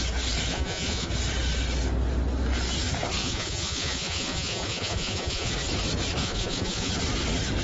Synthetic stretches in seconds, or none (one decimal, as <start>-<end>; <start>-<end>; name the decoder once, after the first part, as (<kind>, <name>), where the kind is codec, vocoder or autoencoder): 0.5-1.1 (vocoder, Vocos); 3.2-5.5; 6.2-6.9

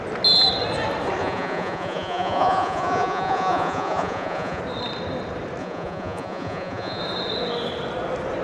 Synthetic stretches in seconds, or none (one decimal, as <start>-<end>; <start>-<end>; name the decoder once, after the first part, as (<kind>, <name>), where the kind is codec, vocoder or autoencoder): 1.2-4.6 (vocoder, Vocos); 5.6-7.0

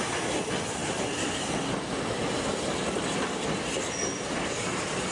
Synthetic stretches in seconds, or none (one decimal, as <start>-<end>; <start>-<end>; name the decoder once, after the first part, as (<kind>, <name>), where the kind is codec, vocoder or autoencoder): none